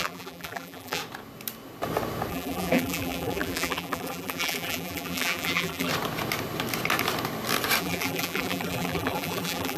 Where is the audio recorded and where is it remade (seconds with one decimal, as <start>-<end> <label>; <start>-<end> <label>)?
0.0-1.0 remade; 1.0-2.3 recorded; 2.3-5.9 remade; 5.9-7.8 recorded; 7.8-9.8 remade